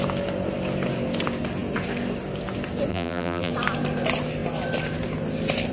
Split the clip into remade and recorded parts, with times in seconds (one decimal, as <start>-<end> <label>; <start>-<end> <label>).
0.0-2.9 recorded; 2.9-3.5 remade; 3.5-5.7 recorded

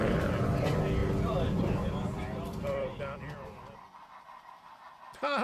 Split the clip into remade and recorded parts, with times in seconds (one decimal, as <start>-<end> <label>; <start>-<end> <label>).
0.0-1.0 recorded; 1.0-4.2 remade; 4.2-5.4 recorded

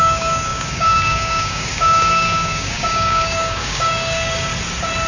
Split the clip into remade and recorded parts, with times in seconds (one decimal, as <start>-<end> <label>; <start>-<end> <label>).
0.0-4.5 remade; 4.5-5.1 recorded

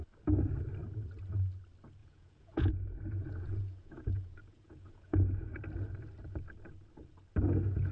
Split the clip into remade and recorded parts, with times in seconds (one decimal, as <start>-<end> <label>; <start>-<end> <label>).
0.0-2.0 recorded; 2.0-5.5 remade; 5.5-7.9 recorded

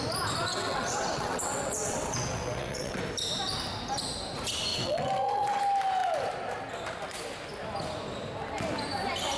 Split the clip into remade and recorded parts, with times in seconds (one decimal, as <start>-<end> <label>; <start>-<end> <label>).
0.0-0.5 recorded; 0.5-3.0 remade; 3.0-4.7 recorded; 4.7-5.6 remade; 5.6-9.4 recorded